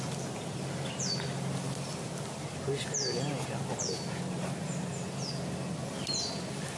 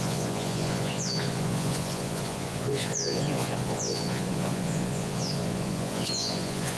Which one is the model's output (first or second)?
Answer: second